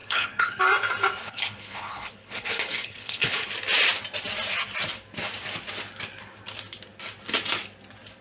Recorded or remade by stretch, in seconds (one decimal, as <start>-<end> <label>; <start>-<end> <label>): 0.0-0.6 remade; 0.6-1.2 recorded; 1.2-3.5 remade; 3.5-8.2 recorded